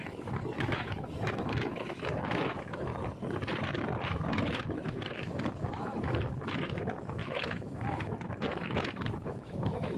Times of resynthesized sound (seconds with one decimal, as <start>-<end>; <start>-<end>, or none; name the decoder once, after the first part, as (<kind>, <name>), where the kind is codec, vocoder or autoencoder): 0.0-2.9 (autoencoder, DAC-VAE); 4.1-10.0